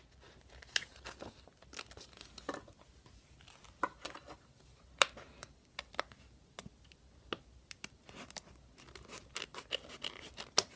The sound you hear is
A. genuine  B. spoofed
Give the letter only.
A